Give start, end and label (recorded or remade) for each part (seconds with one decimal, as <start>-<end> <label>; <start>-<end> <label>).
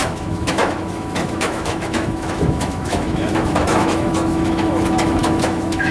0.0-5.9 remade